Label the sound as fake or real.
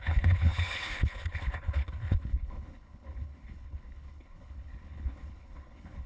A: fake